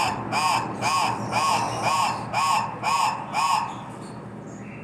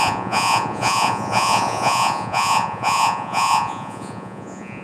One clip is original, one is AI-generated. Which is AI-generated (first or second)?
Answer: second